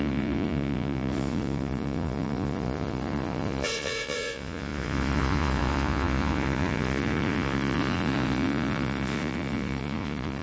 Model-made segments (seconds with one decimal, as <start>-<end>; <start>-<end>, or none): 0.0-10.4